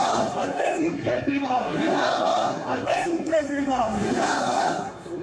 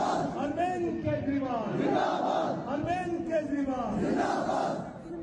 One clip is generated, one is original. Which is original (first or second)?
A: second